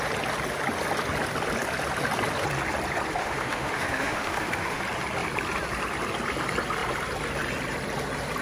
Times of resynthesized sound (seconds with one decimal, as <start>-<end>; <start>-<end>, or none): 3.2-4.8